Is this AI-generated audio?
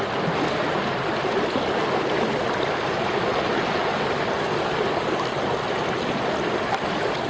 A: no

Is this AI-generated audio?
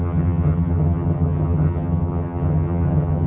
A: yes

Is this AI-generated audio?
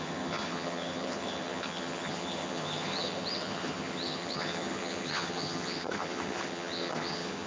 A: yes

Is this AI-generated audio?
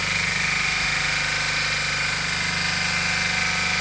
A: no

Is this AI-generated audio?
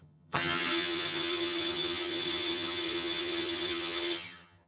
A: yes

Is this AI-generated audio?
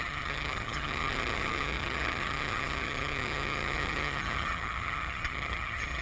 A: yes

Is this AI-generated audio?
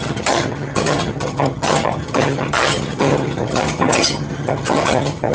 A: yes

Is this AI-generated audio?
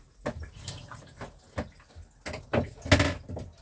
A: no